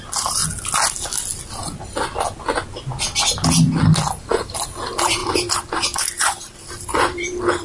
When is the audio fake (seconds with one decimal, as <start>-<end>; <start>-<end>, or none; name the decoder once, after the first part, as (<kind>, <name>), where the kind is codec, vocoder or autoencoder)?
0.0-0.4 (vocoder, BigVGAN v2); 4.1-7.6